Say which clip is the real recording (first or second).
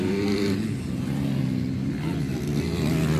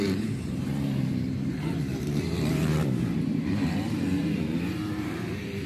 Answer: first